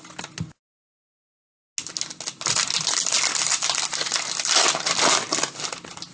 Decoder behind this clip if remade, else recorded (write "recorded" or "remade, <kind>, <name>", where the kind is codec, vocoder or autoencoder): recorded